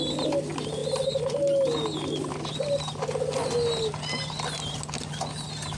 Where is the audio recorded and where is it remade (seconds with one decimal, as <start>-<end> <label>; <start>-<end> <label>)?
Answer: 0.0-5.8 recorded